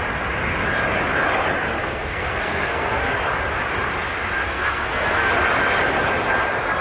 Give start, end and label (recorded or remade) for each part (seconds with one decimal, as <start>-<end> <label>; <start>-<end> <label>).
0.0-1.7 recorded; 1.7-3.1 remade; 3.1-4.4 recorded; 4.4-5.3 remade; 5.3-6.8 recorded